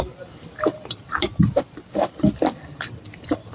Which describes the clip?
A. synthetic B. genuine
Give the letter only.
A